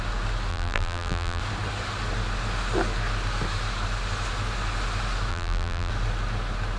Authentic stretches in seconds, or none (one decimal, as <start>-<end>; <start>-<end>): 0.0-0.5; 1.4-5.3; 5.9-6.8